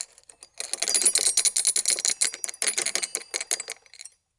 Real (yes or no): yes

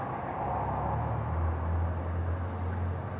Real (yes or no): yes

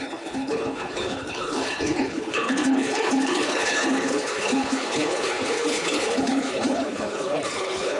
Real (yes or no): no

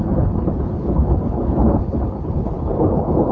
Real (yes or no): no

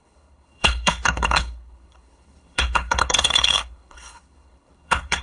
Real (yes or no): no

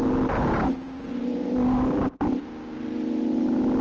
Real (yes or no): yes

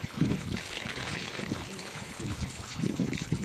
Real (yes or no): no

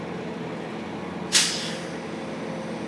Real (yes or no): yes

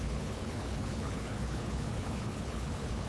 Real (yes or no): no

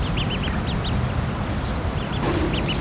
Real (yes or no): yes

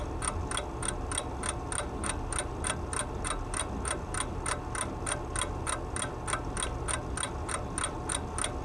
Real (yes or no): yes